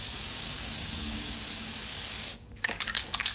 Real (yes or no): no